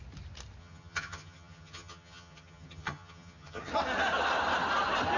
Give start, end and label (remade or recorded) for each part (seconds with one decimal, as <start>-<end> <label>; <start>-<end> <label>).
0.0-0.6 recorded; 0.6-3.7 remade; 3.7-5.2 recorded